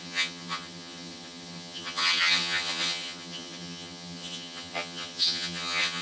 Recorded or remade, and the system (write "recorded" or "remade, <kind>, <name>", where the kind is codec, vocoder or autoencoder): remade, vocoder, HiFi-GAN